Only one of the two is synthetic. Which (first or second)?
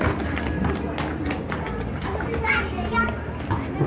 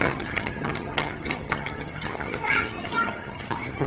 second